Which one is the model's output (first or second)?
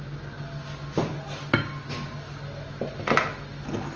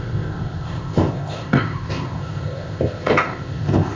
second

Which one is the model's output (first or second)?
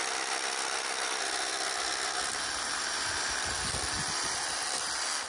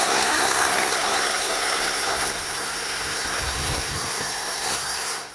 second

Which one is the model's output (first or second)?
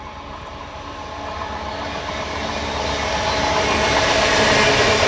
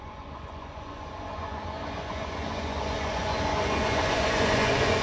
second